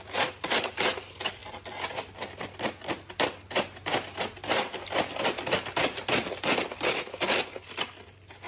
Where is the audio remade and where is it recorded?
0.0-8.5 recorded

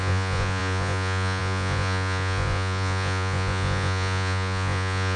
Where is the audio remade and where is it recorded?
0.0-5.2 remade

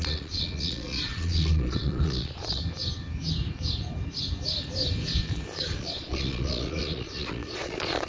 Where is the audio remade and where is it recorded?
0.0-2.6 remade; 2.6-5.8 recorded; 5.8-8.1 remade

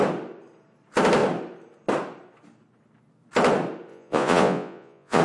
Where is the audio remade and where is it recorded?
0.0-3.9 recorded; 3.9-5.2 remade

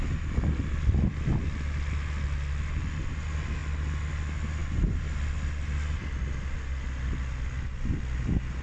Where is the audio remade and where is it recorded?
0.0-8.6 recorded

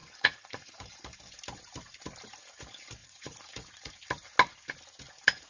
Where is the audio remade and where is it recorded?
0.0-1.0 remade; 1.0-3.0 recorded; 3.0-3.9 remade; 3.9-5.5 recorded

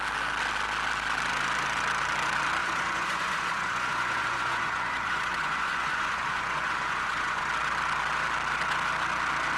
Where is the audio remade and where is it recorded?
0.0-2.6 recorded; 2.6-7.5 remade; 7.5-9.6 recorded

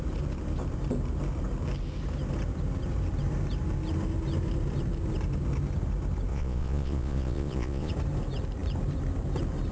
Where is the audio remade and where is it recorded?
0.0-6.3 recorded; 6.3-7.9 remade; 7.9-9.7 recorded